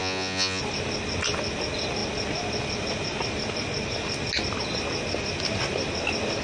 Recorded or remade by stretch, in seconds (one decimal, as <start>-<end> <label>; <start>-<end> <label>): 0.0-0.6 remade; 0.6-6.4 recorded